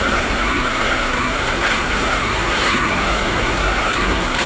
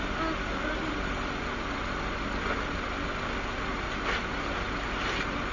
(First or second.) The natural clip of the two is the second